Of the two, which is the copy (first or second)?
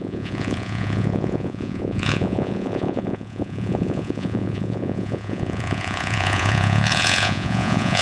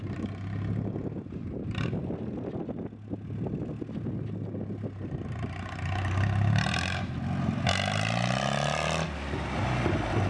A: first